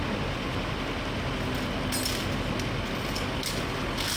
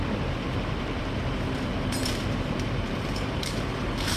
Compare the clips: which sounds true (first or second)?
first